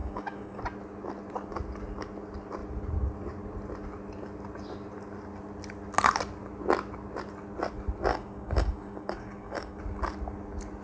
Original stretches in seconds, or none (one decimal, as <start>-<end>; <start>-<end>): 0.6-8.1; 9.8-10.8